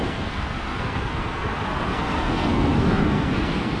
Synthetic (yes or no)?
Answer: yes